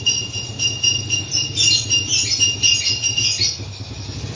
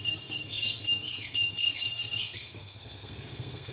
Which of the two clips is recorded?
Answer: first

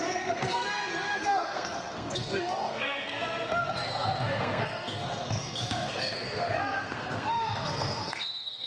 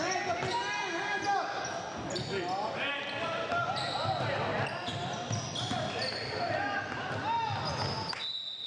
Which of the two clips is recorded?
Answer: second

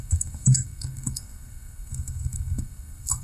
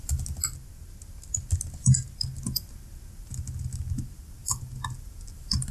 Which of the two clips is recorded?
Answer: second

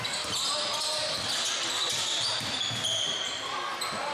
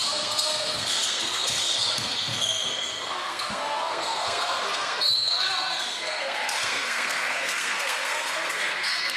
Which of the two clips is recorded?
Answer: first